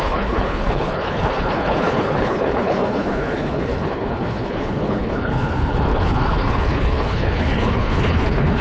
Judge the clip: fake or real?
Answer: fake